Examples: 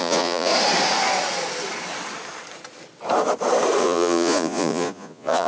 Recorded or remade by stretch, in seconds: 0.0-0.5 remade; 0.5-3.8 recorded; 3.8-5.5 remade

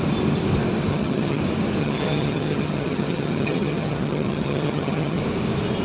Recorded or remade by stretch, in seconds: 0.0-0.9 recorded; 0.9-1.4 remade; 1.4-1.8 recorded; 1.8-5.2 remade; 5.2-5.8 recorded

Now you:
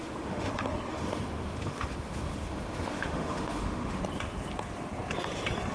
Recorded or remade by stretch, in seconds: 0.0-0.5 remade; 0.5-0.9 recorded; 0.9-4.0 remade; 4.0-5.7 recorded

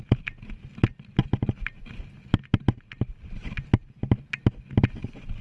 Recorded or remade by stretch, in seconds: 0.0-5.4 recorded